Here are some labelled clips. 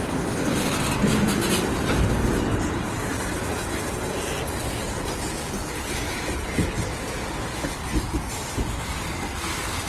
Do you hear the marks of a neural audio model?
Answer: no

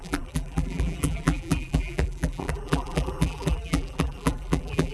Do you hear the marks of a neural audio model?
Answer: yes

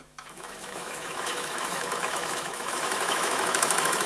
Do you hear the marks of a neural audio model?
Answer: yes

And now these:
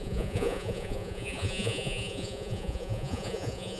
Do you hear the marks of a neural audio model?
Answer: yes